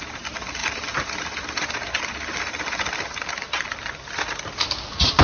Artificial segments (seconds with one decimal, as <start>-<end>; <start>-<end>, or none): none